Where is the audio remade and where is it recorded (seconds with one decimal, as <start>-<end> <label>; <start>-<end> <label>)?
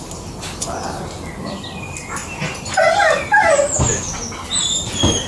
0.0-5.3 recorded